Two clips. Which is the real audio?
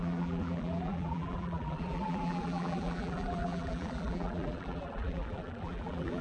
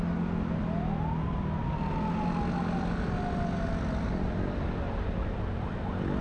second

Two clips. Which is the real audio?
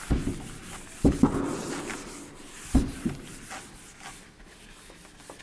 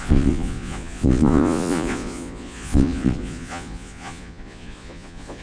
first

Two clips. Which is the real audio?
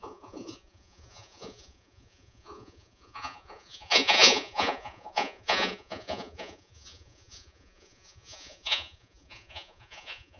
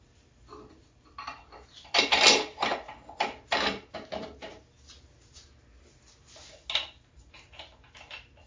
second